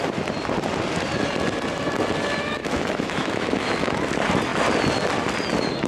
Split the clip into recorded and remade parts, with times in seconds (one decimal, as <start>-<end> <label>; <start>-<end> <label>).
0.0-2.6 recorded; 2.6-4.1 remade; 4.1-5.9 recorded